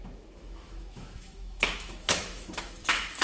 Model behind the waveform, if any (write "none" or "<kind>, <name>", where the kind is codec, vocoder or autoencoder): autoencoder, DAC-VAE